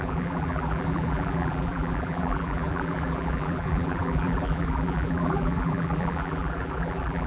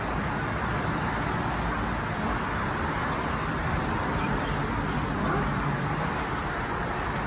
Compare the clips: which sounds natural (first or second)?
second